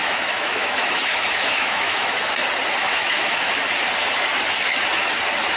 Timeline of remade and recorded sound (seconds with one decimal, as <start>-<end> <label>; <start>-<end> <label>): 0.0-2.3 remade; 2.3-2.8 recorded; 2.8-3.5 remade; 3.5-5.6 recorded